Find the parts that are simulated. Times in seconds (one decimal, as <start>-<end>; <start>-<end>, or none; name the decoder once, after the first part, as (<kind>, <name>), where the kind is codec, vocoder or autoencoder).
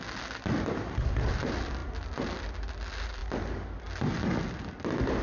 none